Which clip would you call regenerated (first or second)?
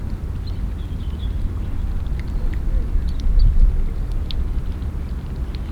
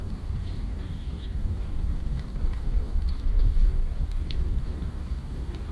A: second